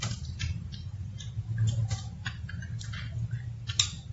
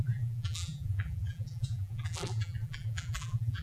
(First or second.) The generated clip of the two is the second